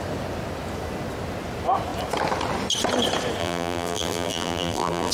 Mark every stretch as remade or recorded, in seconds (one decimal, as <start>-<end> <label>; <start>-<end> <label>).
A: 0.0-3.4 recorded; 3.4-5.1 remade